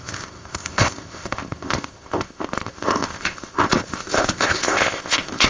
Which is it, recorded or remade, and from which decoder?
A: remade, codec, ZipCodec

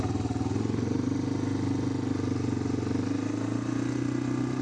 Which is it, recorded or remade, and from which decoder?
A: recorded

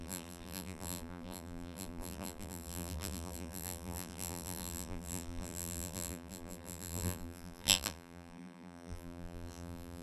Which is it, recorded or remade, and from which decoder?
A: remade, vocoder, BigVGAN v2